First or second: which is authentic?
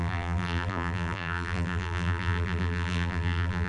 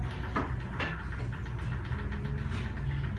second